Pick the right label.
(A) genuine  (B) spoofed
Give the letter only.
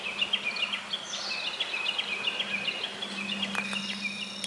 A